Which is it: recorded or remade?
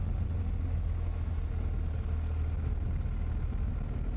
recorded